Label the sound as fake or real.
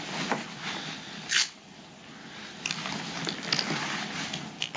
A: real